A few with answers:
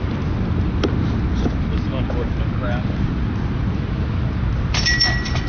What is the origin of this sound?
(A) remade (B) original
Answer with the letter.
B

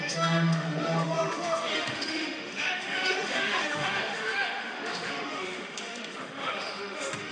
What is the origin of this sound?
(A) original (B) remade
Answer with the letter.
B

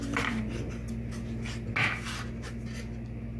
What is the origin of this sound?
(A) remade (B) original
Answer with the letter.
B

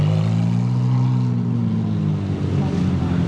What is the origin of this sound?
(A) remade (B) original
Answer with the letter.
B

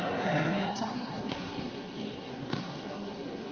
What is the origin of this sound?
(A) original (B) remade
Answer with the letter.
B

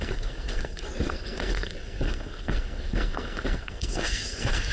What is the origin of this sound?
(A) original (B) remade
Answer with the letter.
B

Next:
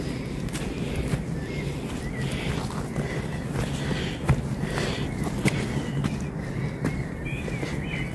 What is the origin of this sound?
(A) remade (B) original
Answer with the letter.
B